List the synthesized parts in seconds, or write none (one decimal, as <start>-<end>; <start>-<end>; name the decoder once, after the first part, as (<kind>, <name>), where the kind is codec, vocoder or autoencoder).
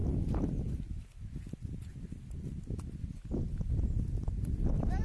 none